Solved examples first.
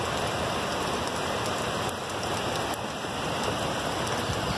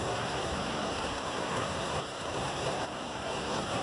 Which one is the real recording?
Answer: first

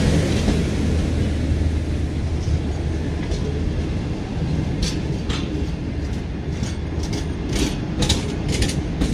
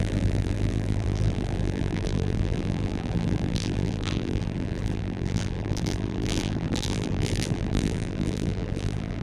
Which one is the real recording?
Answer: first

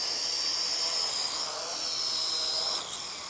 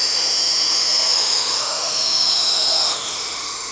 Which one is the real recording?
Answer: first